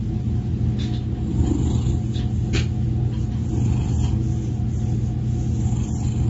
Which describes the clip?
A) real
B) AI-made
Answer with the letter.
A